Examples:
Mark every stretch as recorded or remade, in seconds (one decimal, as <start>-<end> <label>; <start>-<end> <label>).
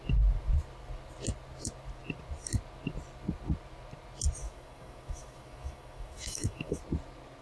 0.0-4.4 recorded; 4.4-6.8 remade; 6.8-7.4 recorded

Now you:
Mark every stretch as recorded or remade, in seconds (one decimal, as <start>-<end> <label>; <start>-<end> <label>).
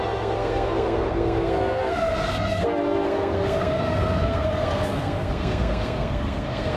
0.0-6.8 remade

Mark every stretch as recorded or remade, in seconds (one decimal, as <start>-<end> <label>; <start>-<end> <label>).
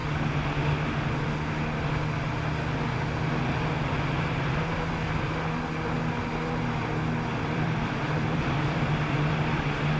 0.0-7.3 recorded; 7.3-8.9 remade; 8.9-10.0 recorded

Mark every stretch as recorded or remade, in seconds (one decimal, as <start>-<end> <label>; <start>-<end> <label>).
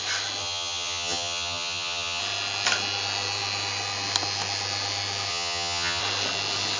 0.0-0.4 recorded; 0.4-2.2 remade; 2.2-5.3 recorded; 5.3-6.0 remade; 6.0-6.8 recorded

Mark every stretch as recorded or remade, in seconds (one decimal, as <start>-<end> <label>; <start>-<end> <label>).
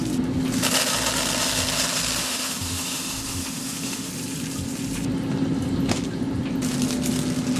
0.0-2.2 recorded; 2.2-4.1 remade; 4.1-7.6 recorded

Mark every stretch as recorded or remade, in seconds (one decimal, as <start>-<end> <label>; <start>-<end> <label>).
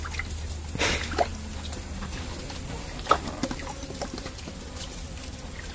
0.0-5.7 recorded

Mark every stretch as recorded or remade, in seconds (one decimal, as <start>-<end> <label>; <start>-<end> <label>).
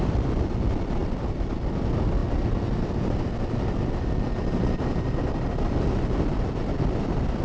0.0-7.4 recorded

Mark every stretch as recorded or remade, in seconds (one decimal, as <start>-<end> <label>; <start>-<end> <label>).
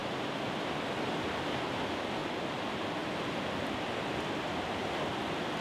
0.0-5.6 recorded